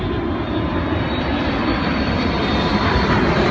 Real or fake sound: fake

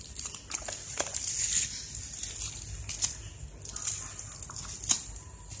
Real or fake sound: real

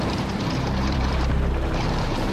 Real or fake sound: fake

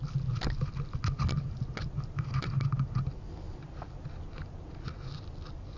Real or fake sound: real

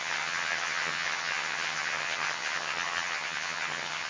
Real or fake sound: fake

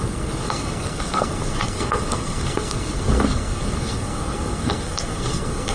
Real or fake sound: fake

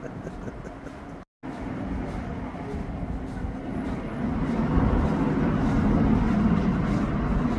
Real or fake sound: real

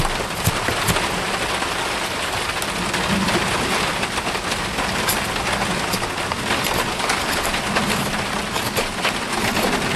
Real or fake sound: real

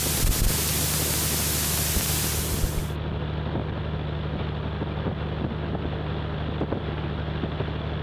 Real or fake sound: real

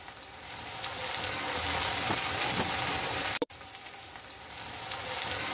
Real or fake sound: real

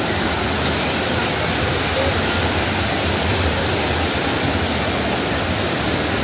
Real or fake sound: real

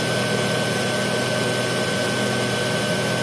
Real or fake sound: real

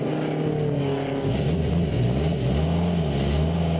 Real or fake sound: real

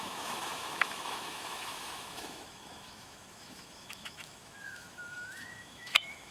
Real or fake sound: fake